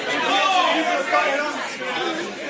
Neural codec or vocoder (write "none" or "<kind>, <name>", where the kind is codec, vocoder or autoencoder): none